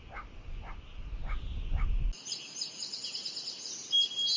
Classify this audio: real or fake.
real